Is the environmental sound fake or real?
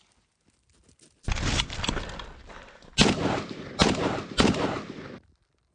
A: real